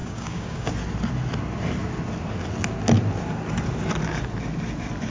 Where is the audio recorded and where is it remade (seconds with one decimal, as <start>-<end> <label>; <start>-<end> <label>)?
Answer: 0.0-0.7 remade; 0.7-5.1 recorded